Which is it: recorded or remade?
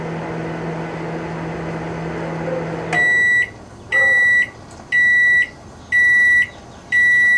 recorded